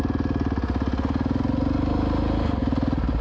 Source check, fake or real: real